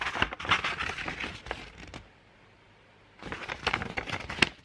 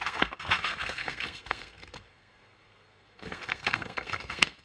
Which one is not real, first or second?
second